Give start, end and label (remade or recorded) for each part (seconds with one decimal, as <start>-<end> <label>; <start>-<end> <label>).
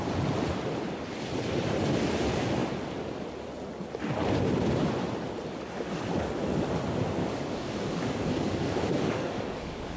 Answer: 0.0-7.2 recorded; 7.2-10.0 remade